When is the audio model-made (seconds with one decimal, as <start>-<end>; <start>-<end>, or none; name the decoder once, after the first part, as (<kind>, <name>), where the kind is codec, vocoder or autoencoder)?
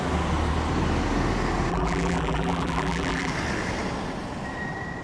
1.7-3.3 (vocoder, BigVGAN v2)